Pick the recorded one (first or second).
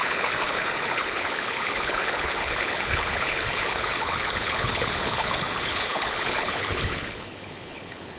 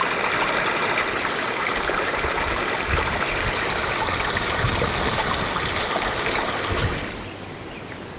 second